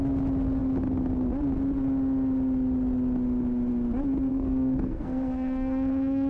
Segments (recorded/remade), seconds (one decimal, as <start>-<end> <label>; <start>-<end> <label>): 0.0-4.3 recorded; 4.3-6.3 remade